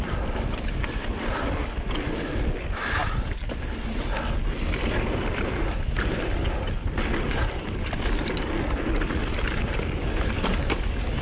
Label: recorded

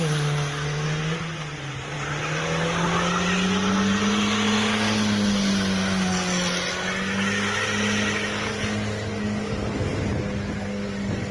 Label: recorded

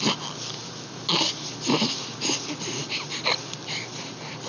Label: recorded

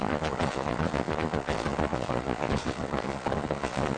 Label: remade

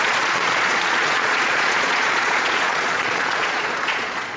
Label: remade